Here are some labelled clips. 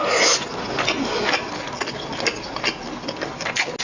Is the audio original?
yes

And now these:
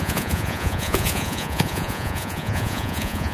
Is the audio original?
no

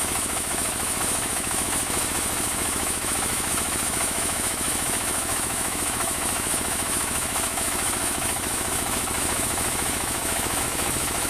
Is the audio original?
no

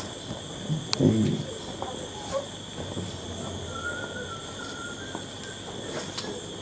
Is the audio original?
yes